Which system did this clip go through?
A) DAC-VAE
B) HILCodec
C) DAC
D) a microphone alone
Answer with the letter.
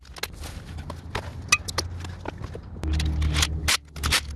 D